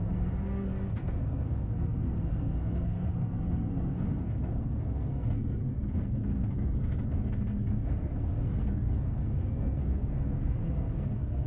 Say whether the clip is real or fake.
fake